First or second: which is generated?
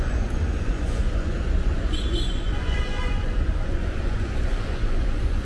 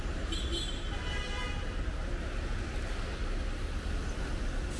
first